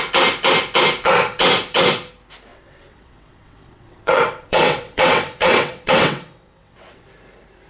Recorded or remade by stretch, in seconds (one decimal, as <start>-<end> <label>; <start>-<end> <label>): 0.0-2.5 recorded; 2.5-7.1 remade; 7.1-7.7 recorded